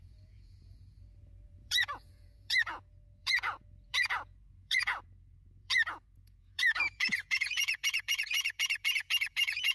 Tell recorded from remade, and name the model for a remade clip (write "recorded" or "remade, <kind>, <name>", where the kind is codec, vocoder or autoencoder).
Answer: remade, vocoder, Vocos